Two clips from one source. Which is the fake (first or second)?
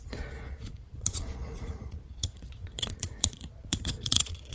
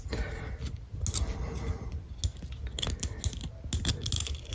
first